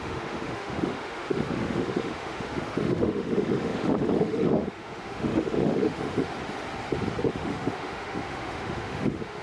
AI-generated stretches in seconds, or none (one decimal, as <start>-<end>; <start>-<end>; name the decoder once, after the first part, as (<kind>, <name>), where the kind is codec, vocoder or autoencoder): 0.0-6.3 (autoencoder, DAC-VAE); 7.3-9.4